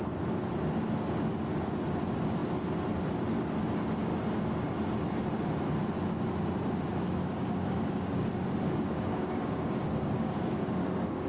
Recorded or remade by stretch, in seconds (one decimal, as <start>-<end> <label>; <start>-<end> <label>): 0.0-7.2 recorded; 7.2-11.3 remade